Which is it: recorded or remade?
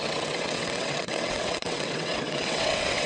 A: remade